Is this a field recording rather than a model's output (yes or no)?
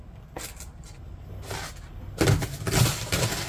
yes